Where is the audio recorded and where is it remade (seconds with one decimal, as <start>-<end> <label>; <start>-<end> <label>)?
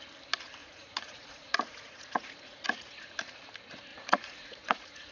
0.0-0.6 recorded; 0.6-3.2 remade; 3.2-3.9 recorded; 3.9-5.1 remade